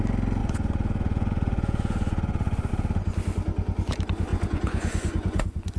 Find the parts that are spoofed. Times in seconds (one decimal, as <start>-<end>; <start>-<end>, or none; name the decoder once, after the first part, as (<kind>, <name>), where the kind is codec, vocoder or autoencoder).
0.4-2.7 (vocoder, Vocos); 4.3-5.8

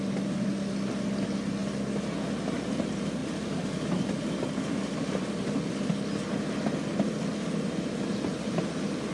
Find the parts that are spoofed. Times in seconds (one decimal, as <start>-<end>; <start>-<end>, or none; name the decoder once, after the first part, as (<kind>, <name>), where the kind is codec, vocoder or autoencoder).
3.2-6.0 (vocoder, BigVGAN v2); 8.3-9.1